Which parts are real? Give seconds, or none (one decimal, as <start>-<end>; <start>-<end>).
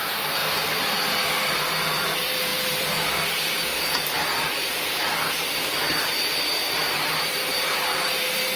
0.4-1.0